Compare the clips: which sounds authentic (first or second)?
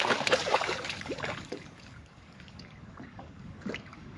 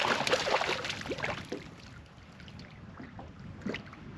second